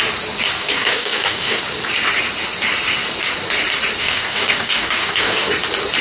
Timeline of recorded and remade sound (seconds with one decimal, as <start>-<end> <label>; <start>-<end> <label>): 0.0-0.6 recorded; 0.6-1.6 remade; 1.6-4.0 recorded; 4.0-5.5 remade; 5.5-6.0 recorded